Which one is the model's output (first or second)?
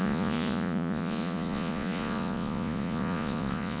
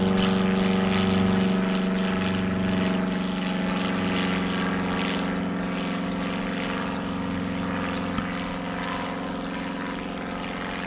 first